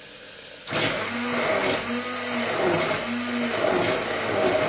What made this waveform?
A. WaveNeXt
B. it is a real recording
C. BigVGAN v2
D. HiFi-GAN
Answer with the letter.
B